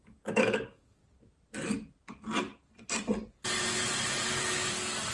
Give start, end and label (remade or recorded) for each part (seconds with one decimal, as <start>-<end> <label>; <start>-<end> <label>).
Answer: 0.0-1.0 remade; 1.0-4.1 recorded; 4.1-5.1 remade